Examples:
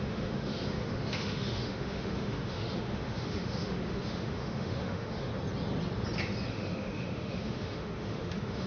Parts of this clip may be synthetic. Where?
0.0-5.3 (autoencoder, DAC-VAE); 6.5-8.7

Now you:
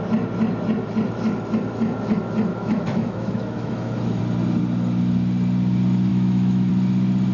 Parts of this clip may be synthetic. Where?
2.5-4.2 (autoencoder, DAC-VAE); 6.1-6.7